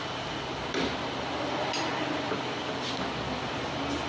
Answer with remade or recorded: recorded